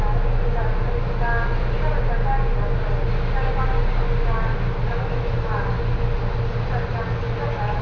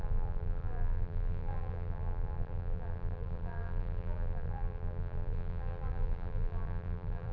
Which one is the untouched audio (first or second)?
first